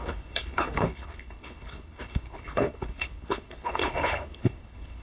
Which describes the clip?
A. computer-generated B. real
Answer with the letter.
A